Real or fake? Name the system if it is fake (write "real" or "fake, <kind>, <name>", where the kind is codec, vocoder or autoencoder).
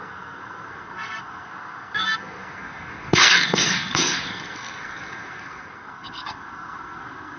fake, codec, SNAC